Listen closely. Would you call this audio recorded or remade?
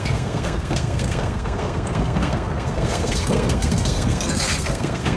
remade